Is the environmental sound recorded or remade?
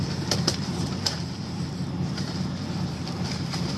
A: remade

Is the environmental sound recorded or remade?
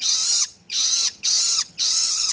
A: remade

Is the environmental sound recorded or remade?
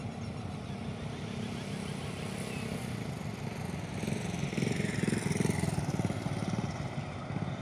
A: recorded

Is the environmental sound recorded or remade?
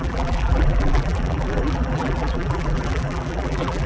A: remade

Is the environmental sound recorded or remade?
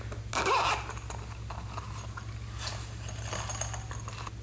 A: recorded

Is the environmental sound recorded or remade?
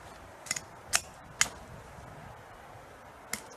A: recorded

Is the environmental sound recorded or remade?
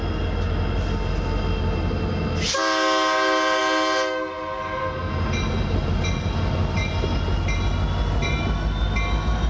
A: recorded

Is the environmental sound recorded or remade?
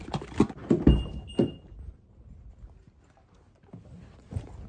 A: recorded